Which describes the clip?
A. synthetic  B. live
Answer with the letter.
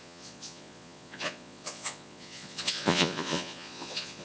A